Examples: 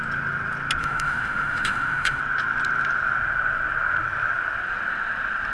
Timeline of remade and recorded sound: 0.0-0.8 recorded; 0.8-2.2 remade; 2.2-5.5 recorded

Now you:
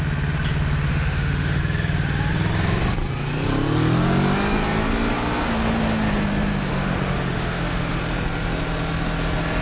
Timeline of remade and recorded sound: 0.0-0.9 recorded; 0.9-1.6 remade; 1.6-6.7 recorded; 6.7-8.0 remade; 8.0-9.6 recorded

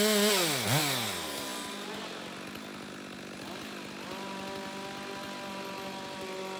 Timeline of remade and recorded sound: 0.0-6.6 recorded

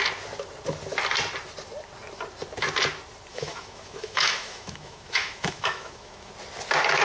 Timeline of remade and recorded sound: 0.0-3.3 recorded; 3.3-6.3 remade; 6.3-7.0 recorded

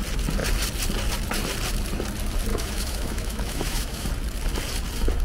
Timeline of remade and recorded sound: 0.0-2.5 recorded; 2.5-4.1 remade; 4.1-5.2 recorded

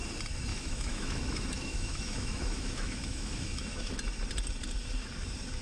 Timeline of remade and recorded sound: 0.0-0.5 recorded; 0.5-3.9 remade; 3.9-5.6 recorded

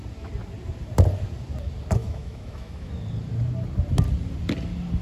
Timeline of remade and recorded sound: 0.0-2.0 recorded; 2.0-2.9 remade; 2.9-5.0 recorded

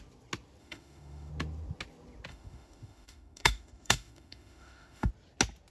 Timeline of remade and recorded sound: 0.0-0.6 recorded; 0.6-1.3 remade; 1.3-2.3 recorded; 2.3-5.1 remade; 5.1-5.7 recorded